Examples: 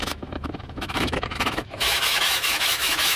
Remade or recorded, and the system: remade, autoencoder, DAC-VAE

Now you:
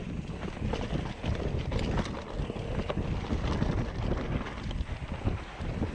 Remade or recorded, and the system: recorded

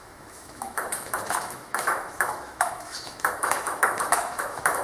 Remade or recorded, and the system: remade, autoencoder, DAC-VAE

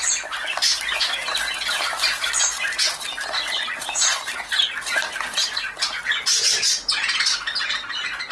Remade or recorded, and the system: recorded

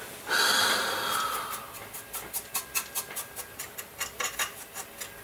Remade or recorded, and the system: recorded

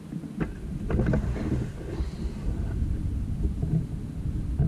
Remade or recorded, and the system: recorded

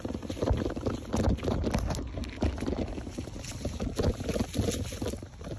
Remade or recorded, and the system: recorded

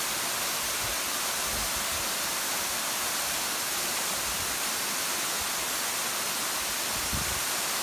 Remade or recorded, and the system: recorded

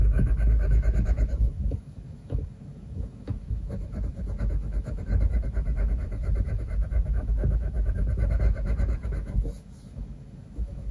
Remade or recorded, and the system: remade, autoencoder, DAC-VAE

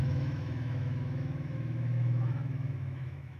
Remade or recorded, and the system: remade, autoencoder, DAC-VAE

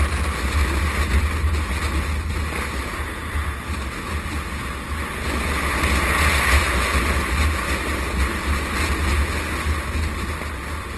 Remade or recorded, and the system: recorded